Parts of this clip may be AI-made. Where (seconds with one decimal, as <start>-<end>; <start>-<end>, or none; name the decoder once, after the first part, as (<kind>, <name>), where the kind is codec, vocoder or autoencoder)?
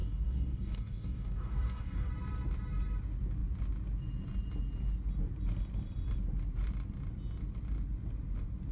0.0-2.1 (codec, DAC)